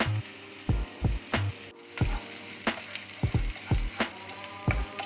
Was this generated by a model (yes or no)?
no